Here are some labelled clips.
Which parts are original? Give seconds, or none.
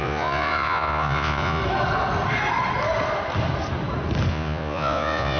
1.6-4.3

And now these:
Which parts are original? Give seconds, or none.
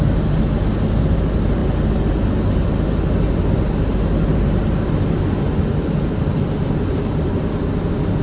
0.0-8.2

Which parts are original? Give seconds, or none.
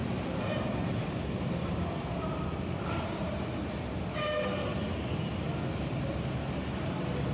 2.3-7.3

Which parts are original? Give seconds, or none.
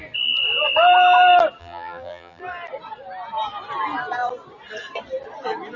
0.0-1.6; 2.4-5.8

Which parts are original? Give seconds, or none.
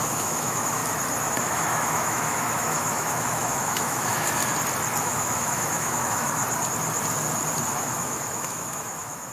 0.8-1.4; 4.4-5.0; 6.4-7.7